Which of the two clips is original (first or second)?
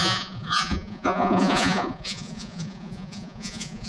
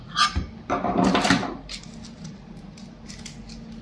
second